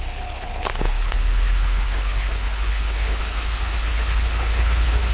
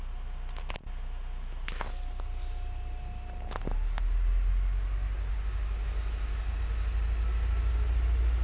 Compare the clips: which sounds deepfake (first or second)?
first